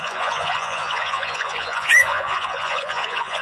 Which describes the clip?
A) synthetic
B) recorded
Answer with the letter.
A